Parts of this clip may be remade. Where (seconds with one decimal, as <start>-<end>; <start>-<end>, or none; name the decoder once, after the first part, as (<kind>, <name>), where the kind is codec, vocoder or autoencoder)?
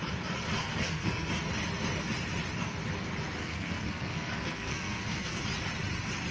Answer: 0.6-1.3 (codec, SNAC); 3.4-5.4